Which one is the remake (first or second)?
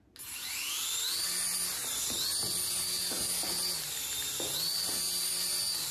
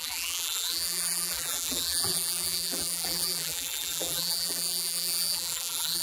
second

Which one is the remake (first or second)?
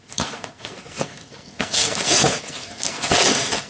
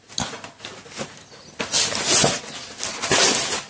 first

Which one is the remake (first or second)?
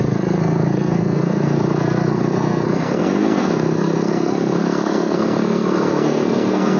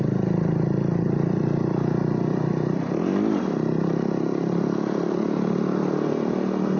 first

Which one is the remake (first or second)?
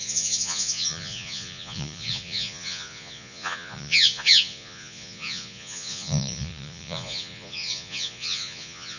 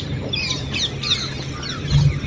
first